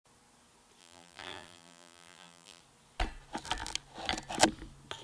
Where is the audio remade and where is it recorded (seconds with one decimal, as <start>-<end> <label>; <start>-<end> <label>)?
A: 0.0-0.8 recorded; 0.8-2.6 remade; 2.6-5.0 recorded